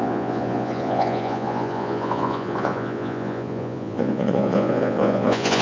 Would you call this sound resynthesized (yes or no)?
yes